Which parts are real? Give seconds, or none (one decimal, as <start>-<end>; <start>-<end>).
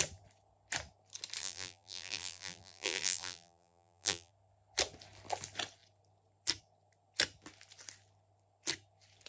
0.0-1.4; 4.3-9.3